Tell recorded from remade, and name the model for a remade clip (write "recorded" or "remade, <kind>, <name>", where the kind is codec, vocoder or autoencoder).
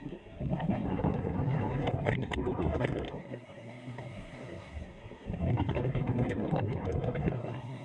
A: remade, codec, SNAC